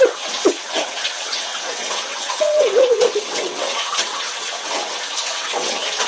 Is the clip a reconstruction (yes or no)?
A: yes